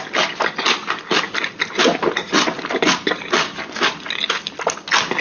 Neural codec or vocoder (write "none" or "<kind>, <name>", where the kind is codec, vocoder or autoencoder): none